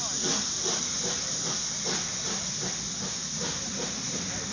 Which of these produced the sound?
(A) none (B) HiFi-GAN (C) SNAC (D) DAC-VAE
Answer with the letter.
A